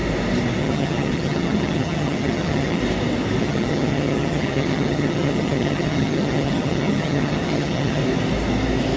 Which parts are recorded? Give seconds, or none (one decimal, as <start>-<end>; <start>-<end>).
0.0-0.6; 2.8-3.4; 8.0-9.0